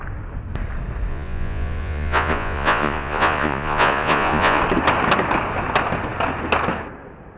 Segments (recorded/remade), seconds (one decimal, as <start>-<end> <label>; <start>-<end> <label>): 0.0-1.1 recorded; 1.1-4.6 remade; 4.6-7.4 recorded